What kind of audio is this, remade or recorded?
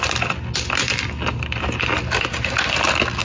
recorded